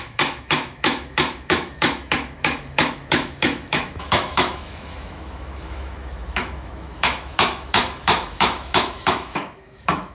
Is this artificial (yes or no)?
yes